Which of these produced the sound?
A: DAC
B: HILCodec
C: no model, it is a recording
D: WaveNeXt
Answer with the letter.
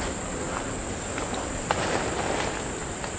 C